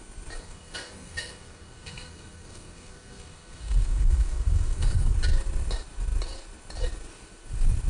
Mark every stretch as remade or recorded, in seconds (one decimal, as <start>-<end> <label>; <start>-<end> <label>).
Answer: 0.0-0.4 recorded; 0.4-5.1 remade; 5.1-7.9 recorded